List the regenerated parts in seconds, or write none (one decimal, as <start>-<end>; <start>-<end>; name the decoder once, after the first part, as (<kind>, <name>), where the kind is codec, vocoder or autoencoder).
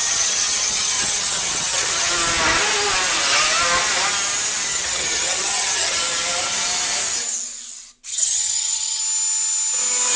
0.0-2.1 (vocoder, HiFi-GAN); 4.7-6.0; 8.1-9.0